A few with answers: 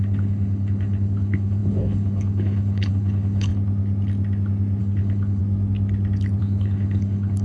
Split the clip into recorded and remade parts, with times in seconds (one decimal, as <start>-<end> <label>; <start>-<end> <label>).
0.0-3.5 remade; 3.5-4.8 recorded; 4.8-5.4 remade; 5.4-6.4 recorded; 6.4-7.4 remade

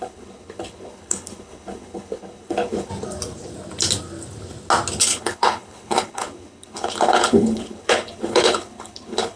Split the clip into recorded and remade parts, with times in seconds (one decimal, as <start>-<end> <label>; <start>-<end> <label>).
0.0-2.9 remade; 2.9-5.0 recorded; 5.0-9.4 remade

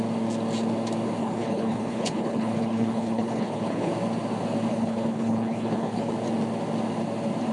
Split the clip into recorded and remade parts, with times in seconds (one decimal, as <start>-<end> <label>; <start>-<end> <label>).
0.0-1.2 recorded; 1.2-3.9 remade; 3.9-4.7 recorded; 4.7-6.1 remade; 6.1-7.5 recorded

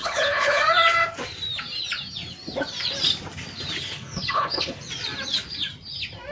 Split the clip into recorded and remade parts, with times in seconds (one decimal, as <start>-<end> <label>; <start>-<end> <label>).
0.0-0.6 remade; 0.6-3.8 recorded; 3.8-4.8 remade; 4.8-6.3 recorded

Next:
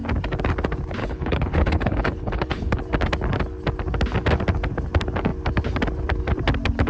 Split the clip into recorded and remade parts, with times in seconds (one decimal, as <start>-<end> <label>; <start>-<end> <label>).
0.0-1.0 recorded; 1.0-2.8 remade; 2.8-6.9 recorded